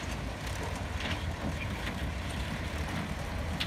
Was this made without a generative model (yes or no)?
no